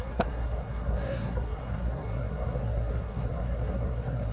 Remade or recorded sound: remade